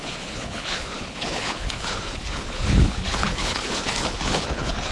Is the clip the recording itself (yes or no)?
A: no